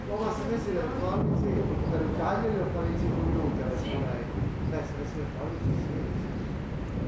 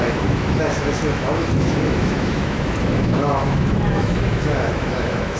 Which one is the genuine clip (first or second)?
first